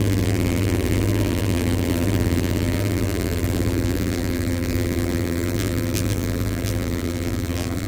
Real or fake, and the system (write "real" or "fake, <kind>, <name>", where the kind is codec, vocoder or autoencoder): fake, vocoder, BigVGAN v2